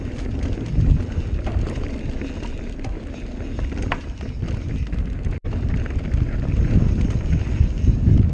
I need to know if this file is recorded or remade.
recorded